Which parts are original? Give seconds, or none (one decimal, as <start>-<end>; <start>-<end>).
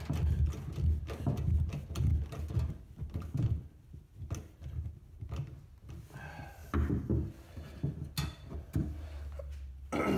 0.0-10.2